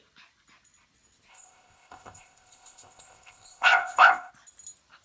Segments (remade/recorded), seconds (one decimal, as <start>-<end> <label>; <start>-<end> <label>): 0.0-1.3 recorded; 1.3-4.3 remade; 4.3-5.0 recorded